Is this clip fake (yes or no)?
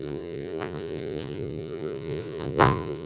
yes